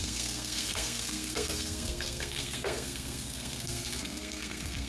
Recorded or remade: remade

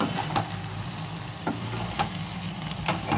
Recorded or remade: recorded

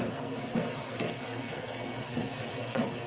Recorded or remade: remade